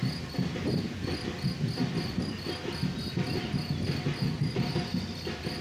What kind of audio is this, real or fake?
real